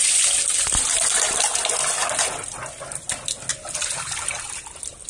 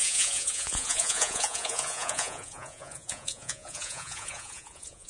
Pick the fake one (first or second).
second